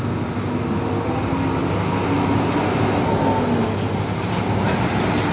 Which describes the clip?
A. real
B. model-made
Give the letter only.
A